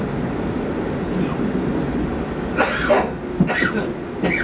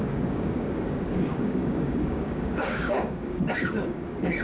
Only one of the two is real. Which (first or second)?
first